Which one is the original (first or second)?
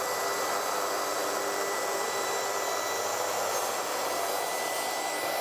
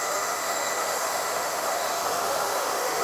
first